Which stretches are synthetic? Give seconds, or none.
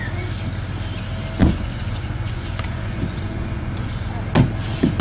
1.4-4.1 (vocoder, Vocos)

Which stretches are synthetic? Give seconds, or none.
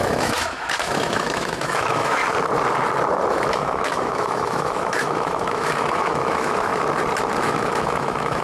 0.0-2.2 (autoencoder, DAC-VAE); 3.3-6.7; 7.4-8.4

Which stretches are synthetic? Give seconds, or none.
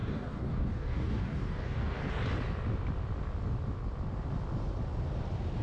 0.0-2.0 (codec, DAC)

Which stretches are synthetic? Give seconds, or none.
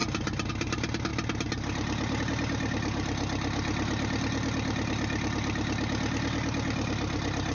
none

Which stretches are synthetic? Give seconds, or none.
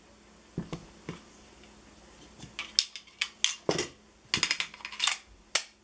none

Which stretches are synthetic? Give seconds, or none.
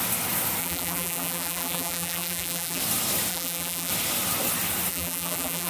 0.6-2.8 (vocoder, BigVGAN v2); 3.3-3.9; 4.9-5.7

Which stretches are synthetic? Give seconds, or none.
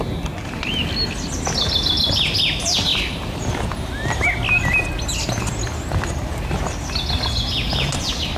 0.4-0.9 (vocoder, BigVGAN v2)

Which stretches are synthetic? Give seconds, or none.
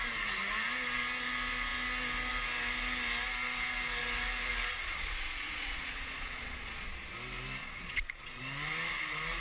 4.7-7.1 (vocoder, Vocos); 7.6-8.4